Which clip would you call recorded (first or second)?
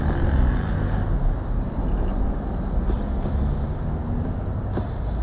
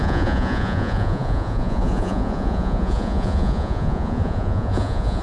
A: first